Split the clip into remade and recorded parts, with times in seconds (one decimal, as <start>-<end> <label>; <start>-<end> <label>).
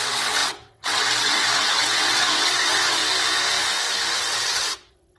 0.0-3.0 remade; 3.0-4.2 recorded; 4.2-5.2 remade